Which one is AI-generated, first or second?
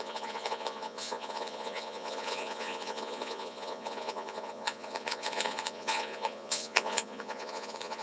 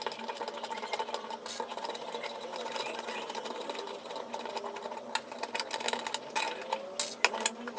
first